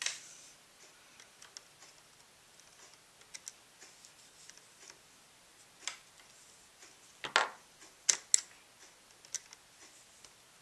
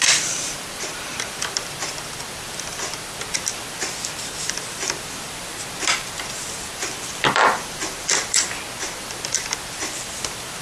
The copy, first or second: second